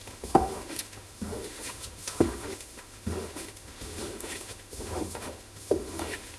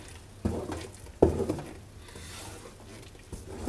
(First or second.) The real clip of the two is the second